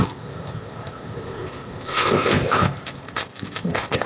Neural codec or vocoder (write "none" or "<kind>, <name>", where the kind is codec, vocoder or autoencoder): codec, ZipCodec